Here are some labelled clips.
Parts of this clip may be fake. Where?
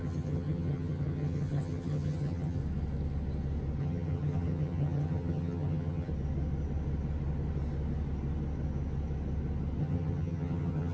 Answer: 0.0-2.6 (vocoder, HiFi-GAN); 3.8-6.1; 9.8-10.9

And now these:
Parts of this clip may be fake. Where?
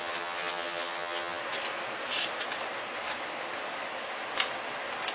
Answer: 0.0-1.4 (vocoder, HiFi-GAN)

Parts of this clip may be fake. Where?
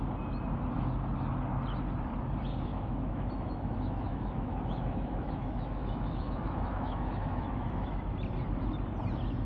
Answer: 2.7-8.0 (autoencoder, DAC-VAE)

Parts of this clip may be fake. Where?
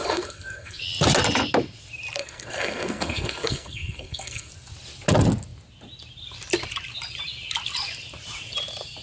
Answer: 0.0-0.8 (codec, SNAC); 2.2-4.5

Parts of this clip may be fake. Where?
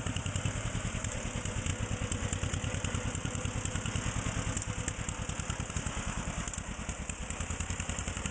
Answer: 0.0-1.7 (vocoder, BigVGAN v2); 5.7-8.3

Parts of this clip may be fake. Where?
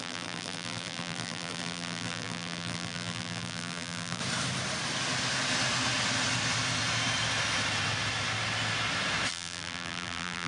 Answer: 0.0-4.2 (vocoder, BigVGAN v2); 9.3-10.5